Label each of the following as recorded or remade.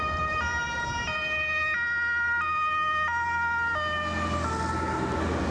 recorded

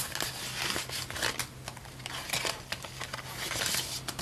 recorded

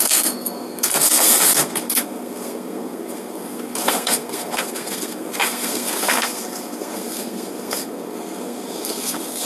remade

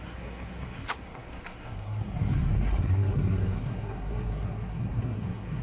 remade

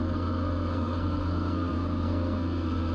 remade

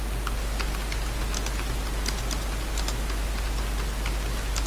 recorded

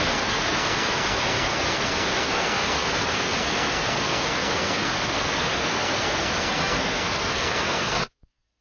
remade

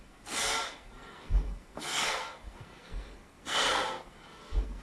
remade